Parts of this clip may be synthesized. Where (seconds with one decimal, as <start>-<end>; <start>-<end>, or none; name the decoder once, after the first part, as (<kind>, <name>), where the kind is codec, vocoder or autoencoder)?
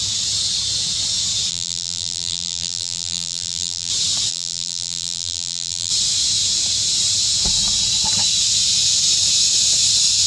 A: 1.5-3.9 (vocoder, BigVGAN v2); 4.3-5.9